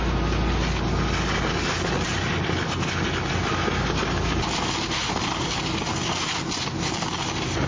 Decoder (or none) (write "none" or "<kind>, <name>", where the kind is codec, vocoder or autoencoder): none